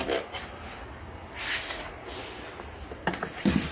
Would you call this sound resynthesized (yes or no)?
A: no